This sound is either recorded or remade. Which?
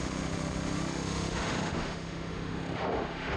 remade